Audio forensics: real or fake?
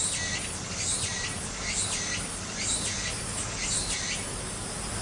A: real